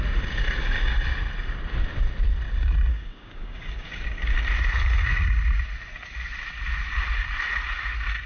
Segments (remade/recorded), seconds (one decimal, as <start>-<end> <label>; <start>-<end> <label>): 0.0-2.9 recorded; 2.9-3.9 remade; 3.9-8.3 recorded